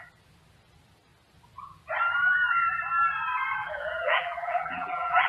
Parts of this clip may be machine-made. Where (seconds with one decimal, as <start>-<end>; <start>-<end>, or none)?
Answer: 3.6-5.3